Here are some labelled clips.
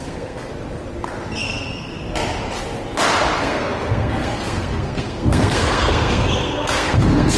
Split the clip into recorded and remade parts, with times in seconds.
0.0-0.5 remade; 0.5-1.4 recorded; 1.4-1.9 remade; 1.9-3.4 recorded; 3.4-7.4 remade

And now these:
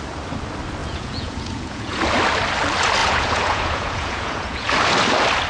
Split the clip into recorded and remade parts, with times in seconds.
0.0-0.8 recorded; 0.8-2.0 remade; 2.0-3.0 recorded; 3.0-4.7 remade; 4.7-5.5 recorded

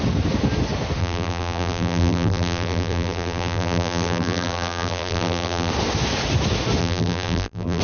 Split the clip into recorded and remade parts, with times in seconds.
0.0-1.0 recorded; 1.0-5.7 remade; 5.7-6.8 recorded; 6.8-7.8 remade

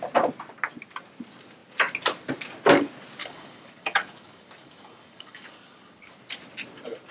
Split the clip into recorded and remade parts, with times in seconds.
0.0-3.2 recorded; 3.2-6.1 remade; 6.1-7.1 recorded